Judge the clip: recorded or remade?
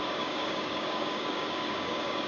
remade